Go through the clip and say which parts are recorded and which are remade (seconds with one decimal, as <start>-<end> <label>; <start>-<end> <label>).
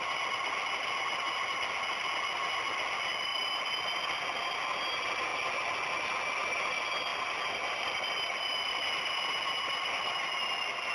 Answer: 0.0-10.9 recorded